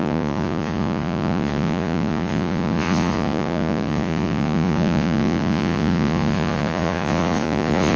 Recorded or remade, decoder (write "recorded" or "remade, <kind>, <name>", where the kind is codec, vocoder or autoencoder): remade, vocoder, Vocos